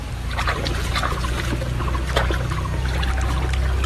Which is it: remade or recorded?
recorded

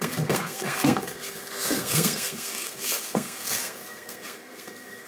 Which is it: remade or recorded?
remade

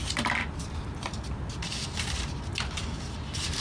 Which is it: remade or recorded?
remade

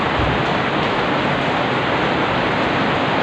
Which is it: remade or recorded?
recorded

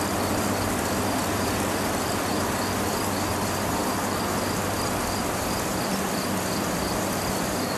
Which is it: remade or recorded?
recorded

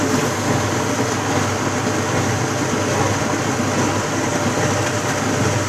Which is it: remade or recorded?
recorded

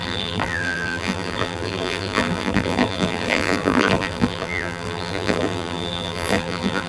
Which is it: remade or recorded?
remade